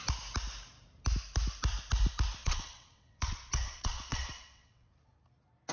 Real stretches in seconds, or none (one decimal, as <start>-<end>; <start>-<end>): 0.0-2.4; 4.9-5.7